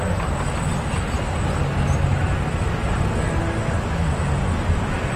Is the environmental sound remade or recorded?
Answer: recorded